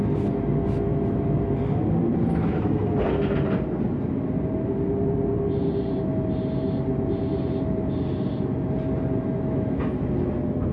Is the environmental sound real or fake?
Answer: real